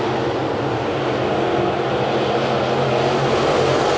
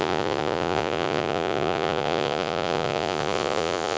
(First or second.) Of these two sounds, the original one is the first